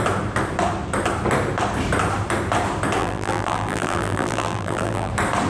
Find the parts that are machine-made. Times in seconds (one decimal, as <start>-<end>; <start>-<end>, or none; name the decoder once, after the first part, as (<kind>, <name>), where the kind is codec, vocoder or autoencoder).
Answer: 3.0-5.1 (vocoder, BigVGAN v2)